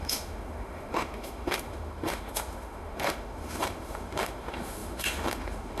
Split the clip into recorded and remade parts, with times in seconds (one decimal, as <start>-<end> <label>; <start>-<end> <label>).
0.0-5.8 remade

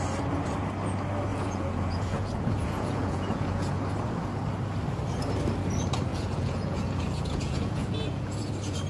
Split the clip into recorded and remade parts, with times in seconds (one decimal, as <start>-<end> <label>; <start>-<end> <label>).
0.0-1.3 recorded; 1.3-3.8 remade; 3.8-6.1 recorded; 6.1-8.5 remade; 8.5-8.9 recorded

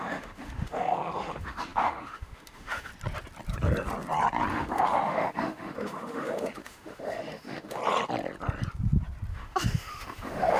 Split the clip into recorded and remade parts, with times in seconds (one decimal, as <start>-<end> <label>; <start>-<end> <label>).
0.0-2.9 remade; 2.9-4.5 recorded; 4.5-7.8 remade; 7.8-9.3 recorded; 9.3-10.6 remade

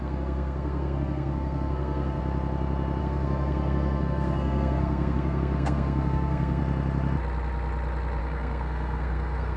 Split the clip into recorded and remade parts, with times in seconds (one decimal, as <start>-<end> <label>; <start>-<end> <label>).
0.0-2.2 remade; 2.2-3.0 recorded; 3.0-6.6 remade; 6.6-8.2 recorded; 8.2-9.6 remade

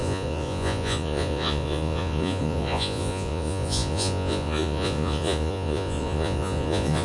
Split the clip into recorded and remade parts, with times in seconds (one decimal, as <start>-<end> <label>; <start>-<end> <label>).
0.0-7.0 remade

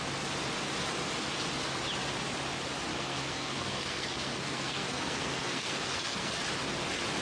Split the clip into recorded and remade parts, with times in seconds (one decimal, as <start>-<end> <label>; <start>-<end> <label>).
0.0-2.9 recorded; 2.9-6.4 remade; 6.4-7.2 recorded

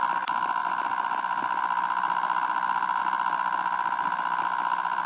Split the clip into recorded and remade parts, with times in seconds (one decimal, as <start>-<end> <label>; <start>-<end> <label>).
0.0-5.1 recorded